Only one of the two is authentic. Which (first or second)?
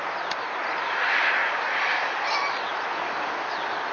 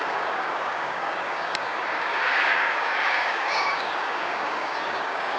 first